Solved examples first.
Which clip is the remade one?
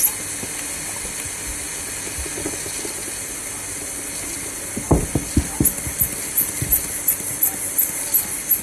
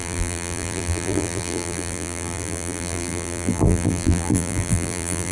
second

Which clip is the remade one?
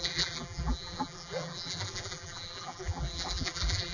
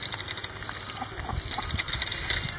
first